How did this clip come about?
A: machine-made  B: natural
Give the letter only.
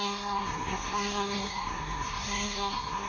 A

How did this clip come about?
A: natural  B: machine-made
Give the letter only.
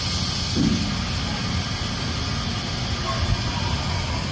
A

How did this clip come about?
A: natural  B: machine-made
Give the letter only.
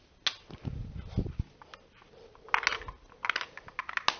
A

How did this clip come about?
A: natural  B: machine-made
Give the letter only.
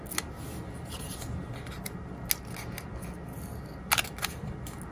A